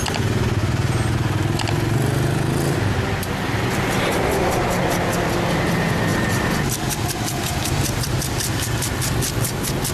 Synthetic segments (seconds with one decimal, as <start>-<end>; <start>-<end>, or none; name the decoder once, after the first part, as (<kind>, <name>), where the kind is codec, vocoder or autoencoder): none